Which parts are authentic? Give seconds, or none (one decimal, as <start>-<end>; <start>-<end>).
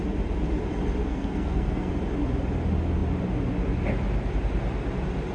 0.0-1.0; 1.9-5.3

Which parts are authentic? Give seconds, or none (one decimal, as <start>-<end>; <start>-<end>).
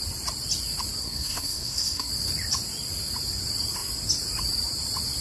0.0-1.0; 2.1-5.2